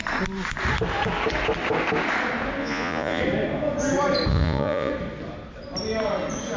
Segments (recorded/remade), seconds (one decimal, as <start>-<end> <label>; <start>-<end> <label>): 0.0-2.6 recorded; 2.6-3.2 remade; 3.2-4.3 recorded; 4.3-4.9 remade; 4.9-6.6 recorded